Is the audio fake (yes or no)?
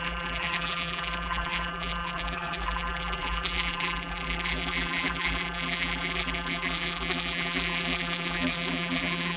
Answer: yes